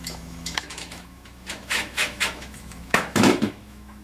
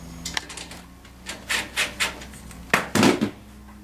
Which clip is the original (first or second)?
second